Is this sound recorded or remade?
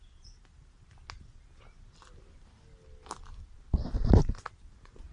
recorded